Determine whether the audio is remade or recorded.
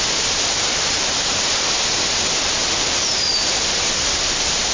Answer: recorded